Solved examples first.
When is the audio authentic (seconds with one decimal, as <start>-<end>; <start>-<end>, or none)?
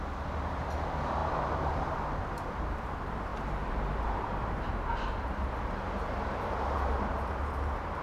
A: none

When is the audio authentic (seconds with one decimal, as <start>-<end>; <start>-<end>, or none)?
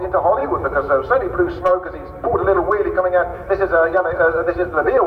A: 0.0-0.4; 1.1-3.3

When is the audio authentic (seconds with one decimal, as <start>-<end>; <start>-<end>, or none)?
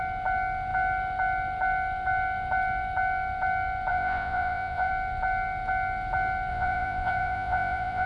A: 0.0-3.9; 4.9-6.5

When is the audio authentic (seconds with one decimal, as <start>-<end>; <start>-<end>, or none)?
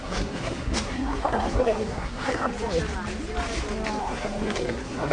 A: 2.5-4.0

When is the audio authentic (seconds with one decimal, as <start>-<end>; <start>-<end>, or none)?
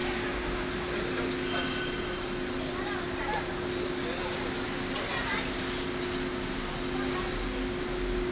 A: 0.0-8.3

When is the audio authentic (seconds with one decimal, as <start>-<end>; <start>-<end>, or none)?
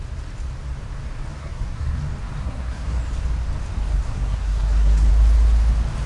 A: 0.0-1.4; 2.0-2.4; 3.0-3.9; 5.1-6.1